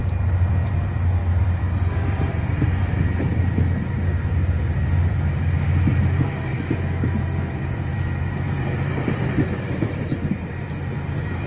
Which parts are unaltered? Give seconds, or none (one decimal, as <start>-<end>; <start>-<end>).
6.5-7.5